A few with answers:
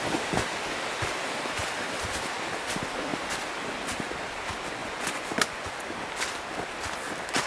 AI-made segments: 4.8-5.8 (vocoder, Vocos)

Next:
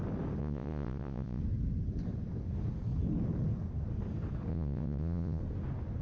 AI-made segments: 0.4-1.4 (vocoder, Vocos); 4.5-5.4